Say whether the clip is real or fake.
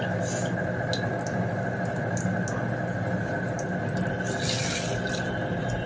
real